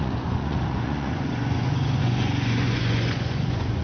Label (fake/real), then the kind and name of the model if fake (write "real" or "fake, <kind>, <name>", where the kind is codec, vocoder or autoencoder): fake, vocoder, Vocos